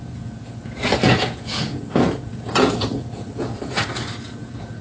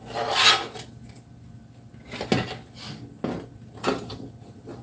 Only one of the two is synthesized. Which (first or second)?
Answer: first